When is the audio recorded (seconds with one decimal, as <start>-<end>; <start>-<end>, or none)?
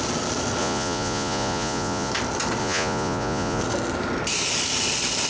0.0-0.6; 2.1-2.6; 3.6-5.3